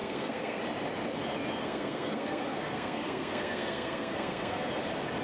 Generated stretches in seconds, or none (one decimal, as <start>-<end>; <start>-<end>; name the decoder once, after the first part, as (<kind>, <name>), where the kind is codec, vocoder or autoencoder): 0.0-0.6 (codec, SNAC); 1.6-4.7